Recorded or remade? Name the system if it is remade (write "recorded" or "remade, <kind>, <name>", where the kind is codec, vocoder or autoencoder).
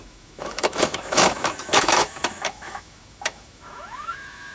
remade, autoencoder, DAC-VAE